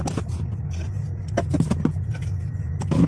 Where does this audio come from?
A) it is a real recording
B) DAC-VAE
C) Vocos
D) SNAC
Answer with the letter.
A